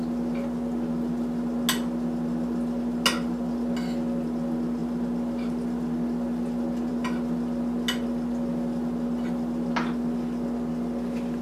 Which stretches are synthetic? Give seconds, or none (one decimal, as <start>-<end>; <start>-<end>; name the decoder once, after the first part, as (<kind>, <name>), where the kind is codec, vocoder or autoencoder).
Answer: none